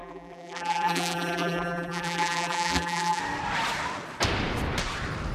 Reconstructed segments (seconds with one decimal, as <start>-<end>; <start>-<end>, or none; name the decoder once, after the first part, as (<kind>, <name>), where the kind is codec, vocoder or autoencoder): 0.0-3.2 (vocoder, BigVGAN v2)